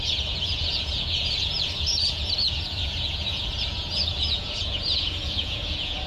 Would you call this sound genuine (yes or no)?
no